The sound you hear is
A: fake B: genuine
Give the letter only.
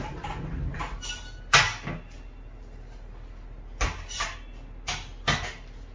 B